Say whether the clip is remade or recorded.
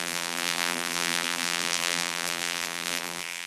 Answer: remade